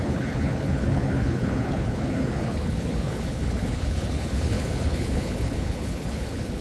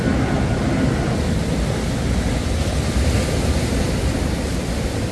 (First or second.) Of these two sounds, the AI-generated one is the first